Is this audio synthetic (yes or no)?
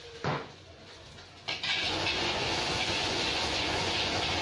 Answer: yes